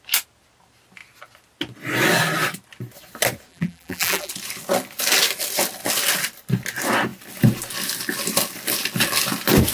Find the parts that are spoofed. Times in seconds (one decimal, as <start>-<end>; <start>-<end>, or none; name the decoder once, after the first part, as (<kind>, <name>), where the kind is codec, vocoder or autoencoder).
3.5-4.3 (vocoder, BigVGAN v2)